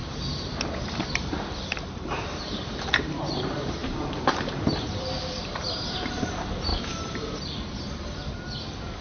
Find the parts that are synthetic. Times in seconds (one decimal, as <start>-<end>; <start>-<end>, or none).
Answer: 0.0-6.7